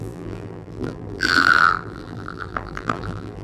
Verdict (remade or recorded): remade